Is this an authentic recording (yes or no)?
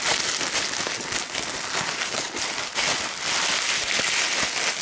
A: yes